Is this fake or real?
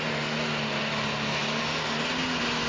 real